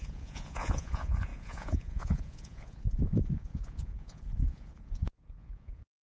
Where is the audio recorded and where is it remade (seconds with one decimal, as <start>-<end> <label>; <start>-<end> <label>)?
0.0-6.0 remade